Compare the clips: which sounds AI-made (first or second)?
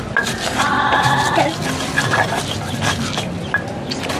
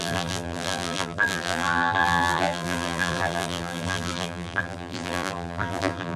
second